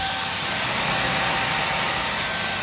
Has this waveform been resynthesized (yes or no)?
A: no